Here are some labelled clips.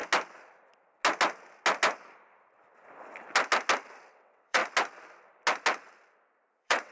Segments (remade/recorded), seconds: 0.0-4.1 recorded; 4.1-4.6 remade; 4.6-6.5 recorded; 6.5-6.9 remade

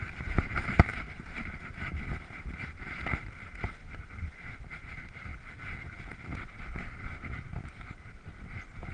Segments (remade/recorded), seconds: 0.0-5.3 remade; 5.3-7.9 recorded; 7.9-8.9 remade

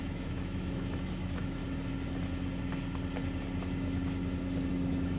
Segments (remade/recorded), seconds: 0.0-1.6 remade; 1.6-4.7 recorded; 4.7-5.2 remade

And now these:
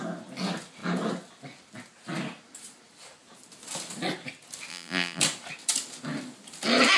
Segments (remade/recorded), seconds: 0.0-4.7 recorded; 4.7-5.2 remade; 5.2-7.0 recorded

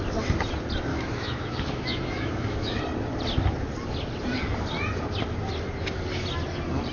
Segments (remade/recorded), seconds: 0.0-0.9 recorded; 0.9-2.8 remade; 2.8-6.9 recorded

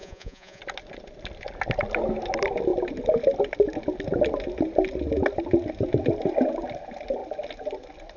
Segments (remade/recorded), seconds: 0.0-0.6 remade; 0.6-8.2 recorded

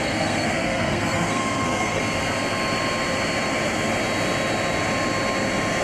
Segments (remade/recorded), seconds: 0.0-2.0 remade; 2.0-5.8 recorded